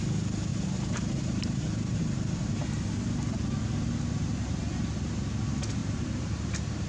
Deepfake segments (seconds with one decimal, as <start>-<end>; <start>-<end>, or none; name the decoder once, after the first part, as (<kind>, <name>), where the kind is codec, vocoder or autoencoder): 0.5-2.0 (vocoder, BigVGAN v2); 5.8-6.5